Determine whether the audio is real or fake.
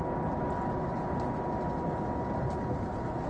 real